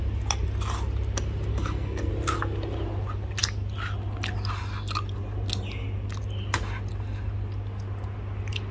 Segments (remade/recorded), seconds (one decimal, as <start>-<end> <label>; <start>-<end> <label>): 0.0-1.5 recorded; 1.5-2.1 remade; 2.1-8.7 recorded